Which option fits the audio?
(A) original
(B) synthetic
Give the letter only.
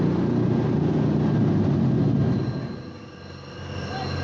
A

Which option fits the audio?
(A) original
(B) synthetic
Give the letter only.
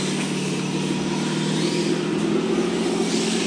A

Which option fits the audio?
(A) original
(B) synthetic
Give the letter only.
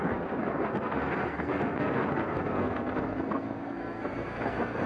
B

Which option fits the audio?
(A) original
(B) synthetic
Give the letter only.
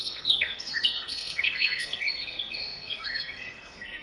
B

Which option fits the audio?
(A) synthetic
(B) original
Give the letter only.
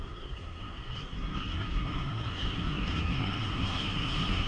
A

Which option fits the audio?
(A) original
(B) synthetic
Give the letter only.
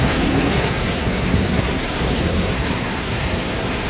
B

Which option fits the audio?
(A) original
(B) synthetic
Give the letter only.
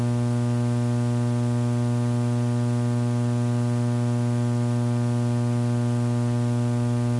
A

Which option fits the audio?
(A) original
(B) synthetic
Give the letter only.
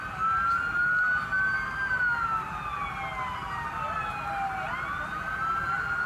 A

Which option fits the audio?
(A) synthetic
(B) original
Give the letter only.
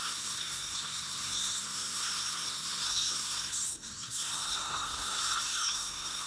A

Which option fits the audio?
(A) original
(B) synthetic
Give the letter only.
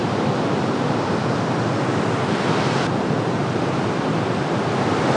A